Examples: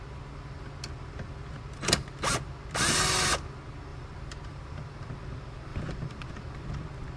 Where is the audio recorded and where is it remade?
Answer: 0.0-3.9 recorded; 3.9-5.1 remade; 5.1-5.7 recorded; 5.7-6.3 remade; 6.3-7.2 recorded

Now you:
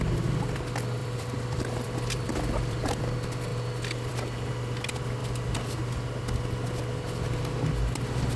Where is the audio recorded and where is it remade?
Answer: 0.0-1.0 recorded; 1.0-3.0 remade; 3.0-5.2 recorded; 5.2-5.8 remade; 5.8-8.4 recorded

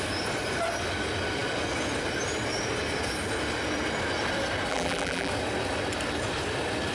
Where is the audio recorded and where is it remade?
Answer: 0.0-4.7 recorded; 4.7-5.3 remade; 5.3-6.9 recorded